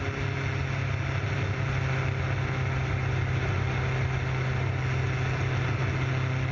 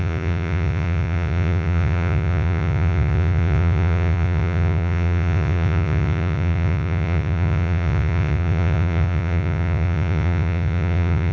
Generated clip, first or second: second